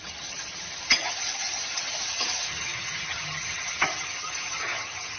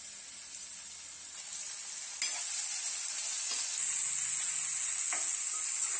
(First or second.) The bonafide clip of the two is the second